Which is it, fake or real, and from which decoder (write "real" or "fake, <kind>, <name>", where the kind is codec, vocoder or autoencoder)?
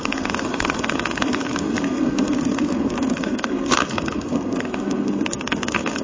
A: fake, codec, SNAC